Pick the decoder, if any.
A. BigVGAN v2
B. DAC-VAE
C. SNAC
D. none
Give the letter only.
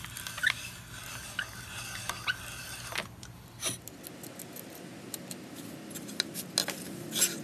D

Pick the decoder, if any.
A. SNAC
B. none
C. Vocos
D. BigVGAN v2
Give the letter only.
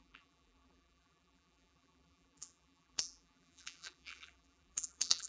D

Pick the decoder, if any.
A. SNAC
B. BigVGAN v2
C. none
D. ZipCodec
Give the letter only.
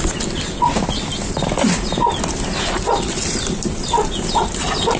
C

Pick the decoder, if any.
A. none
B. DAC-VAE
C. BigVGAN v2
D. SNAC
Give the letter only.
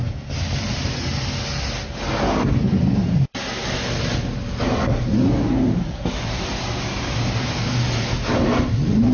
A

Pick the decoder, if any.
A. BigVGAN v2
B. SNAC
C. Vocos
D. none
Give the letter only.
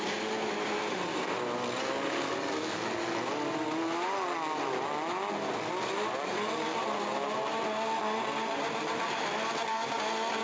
D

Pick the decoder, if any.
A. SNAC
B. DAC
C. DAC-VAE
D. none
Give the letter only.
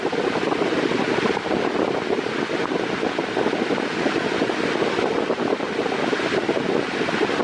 D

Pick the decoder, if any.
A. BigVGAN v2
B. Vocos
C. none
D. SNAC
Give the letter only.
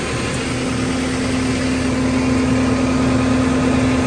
C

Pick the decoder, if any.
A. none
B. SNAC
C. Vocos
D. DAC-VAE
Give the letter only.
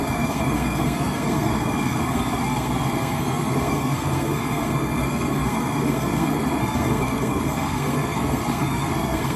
B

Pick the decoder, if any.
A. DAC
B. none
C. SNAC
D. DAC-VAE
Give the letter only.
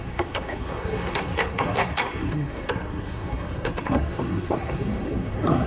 C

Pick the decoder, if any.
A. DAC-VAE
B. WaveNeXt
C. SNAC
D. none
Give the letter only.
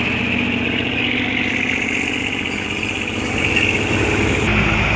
D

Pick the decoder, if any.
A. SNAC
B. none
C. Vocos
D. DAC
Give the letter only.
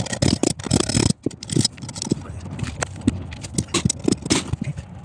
B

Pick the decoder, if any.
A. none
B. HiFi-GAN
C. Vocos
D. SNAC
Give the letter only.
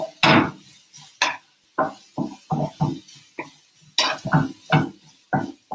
A